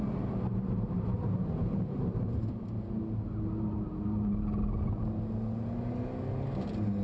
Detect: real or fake real